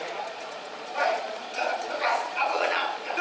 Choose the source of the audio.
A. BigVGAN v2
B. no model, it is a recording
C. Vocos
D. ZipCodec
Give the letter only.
C